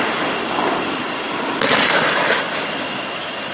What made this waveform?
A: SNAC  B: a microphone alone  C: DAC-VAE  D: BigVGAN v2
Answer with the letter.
B